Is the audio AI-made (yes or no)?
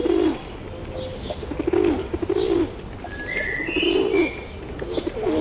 no